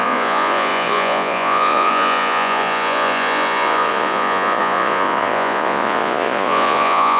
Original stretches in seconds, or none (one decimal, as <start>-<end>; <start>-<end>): none